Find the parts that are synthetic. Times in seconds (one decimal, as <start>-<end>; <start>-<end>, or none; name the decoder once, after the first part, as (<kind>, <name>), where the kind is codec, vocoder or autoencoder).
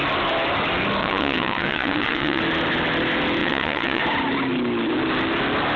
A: 1.0-2.4 (vocoder, WaveNeXt); 3.4-4.0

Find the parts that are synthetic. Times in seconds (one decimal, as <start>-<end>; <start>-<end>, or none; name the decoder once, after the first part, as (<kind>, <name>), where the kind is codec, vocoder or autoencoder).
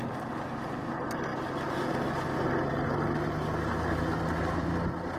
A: none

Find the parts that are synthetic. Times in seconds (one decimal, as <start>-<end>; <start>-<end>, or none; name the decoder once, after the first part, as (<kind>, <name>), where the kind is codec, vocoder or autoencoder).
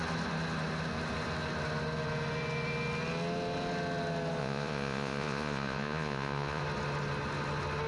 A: 4.4-6.6 (vocoder, Vocos)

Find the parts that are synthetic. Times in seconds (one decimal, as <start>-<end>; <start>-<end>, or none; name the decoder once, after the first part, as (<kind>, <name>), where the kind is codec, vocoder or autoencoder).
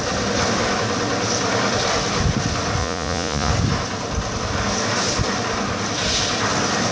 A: 2.8-3.5 (vocoder, Vocos)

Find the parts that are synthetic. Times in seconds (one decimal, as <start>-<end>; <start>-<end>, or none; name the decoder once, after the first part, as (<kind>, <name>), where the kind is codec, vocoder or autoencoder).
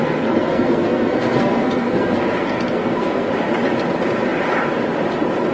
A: 0.0-3.3 (codec, SNAC)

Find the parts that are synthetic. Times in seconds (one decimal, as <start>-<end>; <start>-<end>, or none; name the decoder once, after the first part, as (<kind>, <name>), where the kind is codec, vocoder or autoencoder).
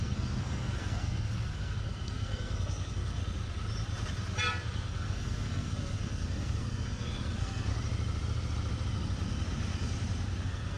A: 0.0-3.2 (codec, SNAC); 4.4-7.7; 10.4-10.8